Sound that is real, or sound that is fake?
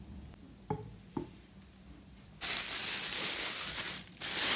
fake